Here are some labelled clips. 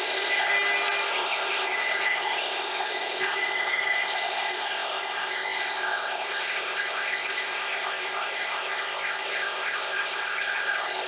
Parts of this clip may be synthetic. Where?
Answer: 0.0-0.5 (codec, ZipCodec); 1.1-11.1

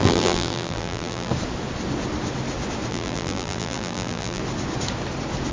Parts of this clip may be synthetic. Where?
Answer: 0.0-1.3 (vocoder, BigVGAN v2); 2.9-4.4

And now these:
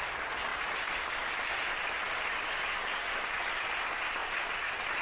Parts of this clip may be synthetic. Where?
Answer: none

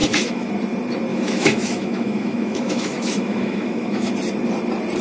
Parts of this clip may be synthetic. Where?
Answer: 0.0-0.5 (autoencoder, DAC-VAE); 1.1-4.1

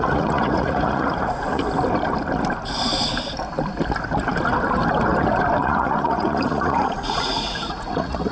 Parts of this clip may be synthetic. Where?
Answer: 0.0-1.6 (vocoder, Vocos); 5.6-8.3

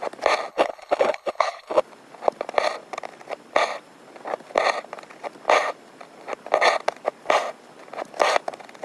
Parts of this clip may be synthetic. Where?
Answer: 0.5-1.8 (codec, HILCodec)